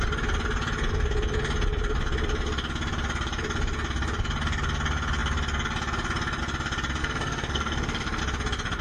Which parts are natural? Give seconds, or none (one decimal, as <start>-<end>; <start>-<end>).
0.0-7.0; 8.2-8.8